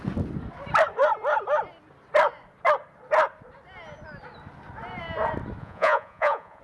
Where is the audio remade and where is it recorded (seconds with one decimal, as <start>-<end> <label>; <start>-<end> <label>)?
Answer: 0.0-5.6 recorded; 5.6-6.6 remade